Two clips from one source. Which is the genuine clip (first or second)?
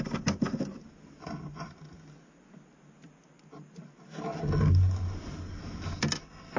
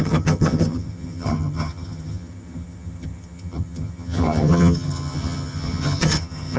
first